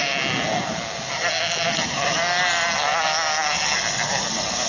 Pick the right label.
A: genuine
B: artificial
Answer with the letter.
A